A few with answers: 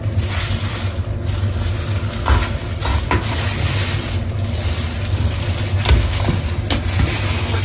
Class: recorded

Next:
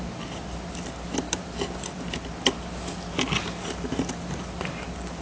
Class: recorded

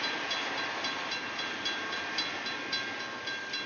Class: recorded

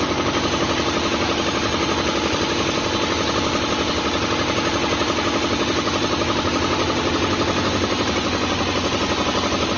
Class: recorded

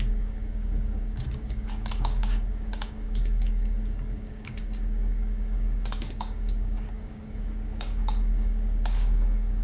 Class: remade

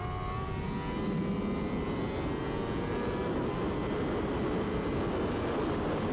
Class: recorded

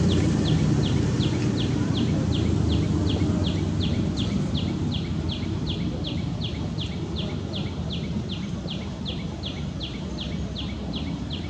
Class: recorded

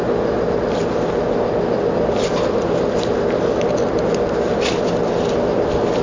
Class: recorded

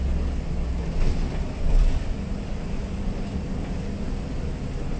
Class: recorded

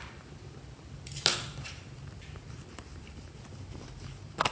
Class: recorded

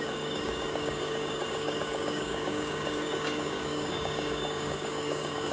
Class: remade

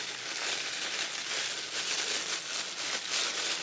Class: recorded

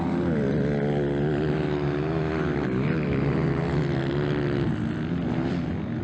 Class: recorded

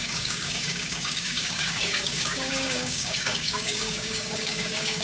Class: remade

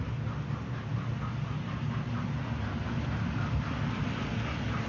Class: recorded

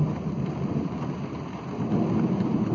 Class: recorded